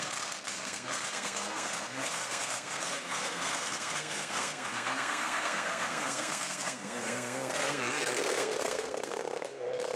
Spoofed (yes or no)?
yes